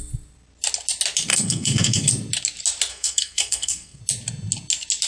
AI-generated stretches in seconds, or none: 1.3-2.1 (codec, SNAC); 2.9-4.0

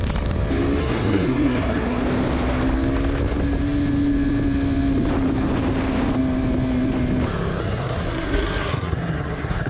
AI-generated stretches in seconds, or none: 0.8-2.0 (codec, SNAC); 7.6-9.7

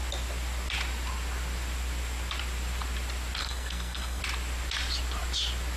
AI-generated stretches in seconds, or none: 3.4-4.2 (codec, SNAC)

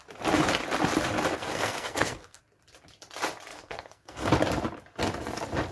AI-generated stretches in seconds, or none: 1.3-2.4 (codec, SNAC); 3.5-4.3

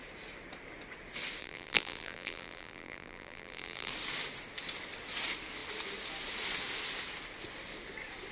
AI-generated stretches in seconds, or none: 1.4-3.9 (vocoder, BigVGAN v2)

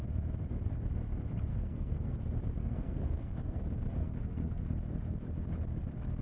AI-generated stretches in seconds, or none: 1.5-2.2 (codec, SNAC); 2.6-3.6; 4.0-4.6

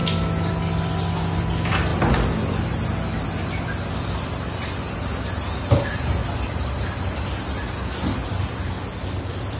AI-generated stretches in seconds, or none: 6.2-6.8 (vocoder, BigVGAN v2)

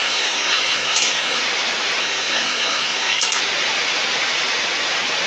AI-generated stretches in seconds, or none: 0.0-1.4 (codec, SNAC); 2.0-3.4